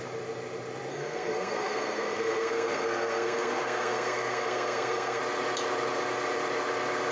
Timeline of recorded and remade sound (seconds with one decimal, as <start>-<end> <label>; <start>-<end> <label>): 0.0-0.9 recorded; 0.9-5.2 remade; 5.2-7.1 recorded